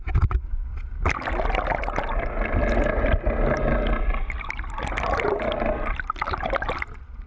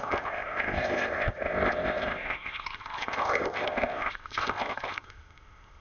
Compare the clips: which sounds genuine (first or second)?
first